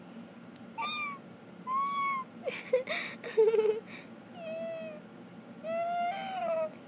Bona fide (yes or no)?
yes